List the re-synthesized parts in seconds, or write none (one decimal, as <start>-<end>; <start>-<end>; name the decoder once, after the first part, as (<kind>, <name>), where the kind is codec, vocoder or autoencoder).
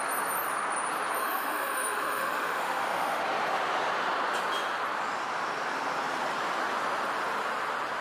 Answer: 1.2-3.2 (autoencoder, DAC-VAE)